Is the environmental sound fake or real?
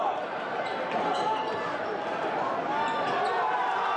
real